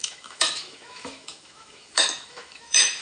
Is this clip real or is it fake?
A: fake